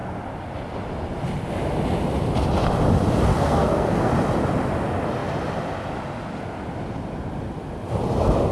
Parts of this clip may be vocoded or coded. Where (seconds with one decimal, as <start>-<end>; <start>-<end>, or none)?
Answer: 3.3-4.1